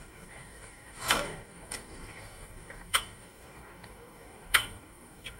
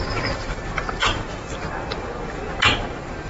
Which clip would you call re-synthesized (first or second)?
first